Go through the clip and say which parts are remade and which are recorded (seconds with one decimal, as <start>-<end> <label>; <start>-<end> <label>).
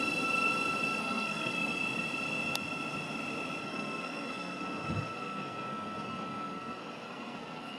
0.0-1.0 recorded; 1.0-1.8 remade; 1.8-3.6 recorded; 3.6-7.8 remade